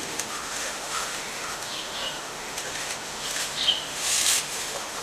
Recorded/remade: remade